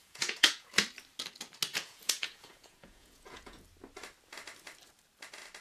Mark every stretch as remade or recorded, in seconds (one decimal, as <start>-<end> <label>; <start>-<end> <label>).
0.0-0.7 remade; 0.7-1.7 recorded; 1.7-3.6 remade; 3.6-5.6 recorded